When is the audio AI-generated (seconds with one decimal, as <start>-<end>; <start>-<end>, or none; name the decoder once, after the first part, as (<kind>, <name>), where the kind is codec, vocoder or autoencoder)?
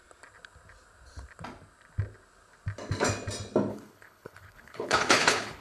3.7-5.6 (codec, HILCodec)